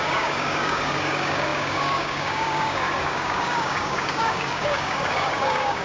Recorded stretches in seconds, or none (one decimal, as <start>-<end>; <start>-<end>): none